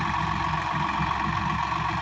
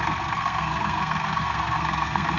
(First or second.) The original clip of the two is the first